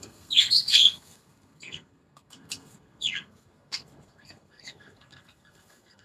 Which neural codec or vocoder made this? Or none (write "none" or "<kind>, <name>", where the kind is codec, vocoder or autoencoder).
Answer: codec, SNAC